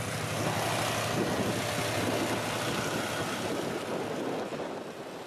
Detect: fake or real real